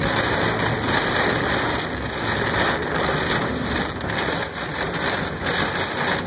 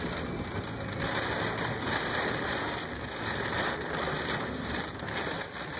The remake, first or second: second